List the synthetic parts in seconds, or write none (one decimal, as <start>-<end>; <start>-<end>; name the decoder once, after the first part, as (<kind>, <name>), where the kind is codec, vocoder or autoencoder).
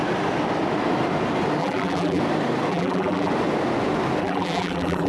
1.6-2.2 (vocoder, BigVGAN v2); 2.7-3.3; 4.2-5.1